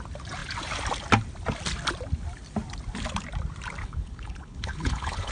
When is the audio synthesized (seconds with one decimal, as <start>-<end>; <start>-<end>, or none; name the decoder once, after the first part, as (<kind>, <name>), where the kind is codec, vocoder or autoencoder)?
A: 3.8-5.3 (codec, HILCodec)